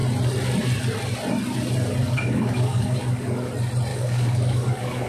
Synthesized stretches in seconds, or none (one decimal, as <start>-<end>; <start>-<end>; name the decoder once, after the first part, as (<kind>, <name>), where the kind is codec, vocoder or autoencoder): 2.0-3.5 (codec, DAC); 3.9-5.1